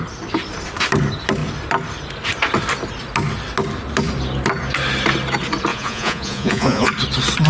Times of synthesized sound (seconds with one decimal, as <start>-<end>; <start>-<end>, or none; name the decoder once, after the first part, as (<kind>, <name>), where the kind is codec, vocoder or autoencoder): 5.7-6.9 (vocoder, Vocos)